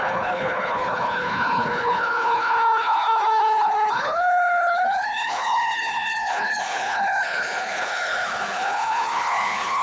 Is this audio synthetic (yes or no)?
yes